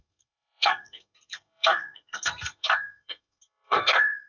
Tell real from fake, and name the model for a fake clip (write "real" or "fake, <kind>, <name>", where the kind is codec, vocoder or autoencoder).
fake, codec, SNAC